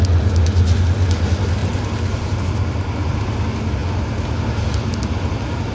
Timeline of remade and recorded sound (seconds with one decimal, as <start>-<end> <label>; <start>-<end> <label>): 0.0-1.6 recorded; 1.6-2.4 remade; 2.4-5.7 recorded